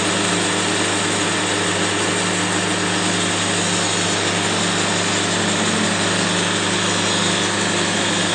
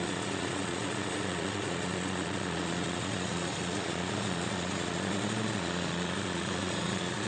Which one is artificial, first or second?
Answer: second